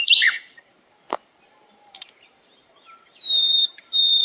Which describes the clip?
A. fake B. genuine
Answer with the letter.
A